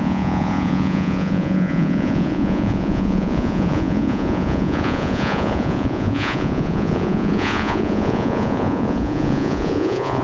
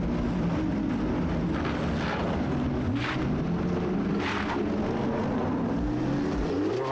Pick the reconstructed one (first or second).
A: first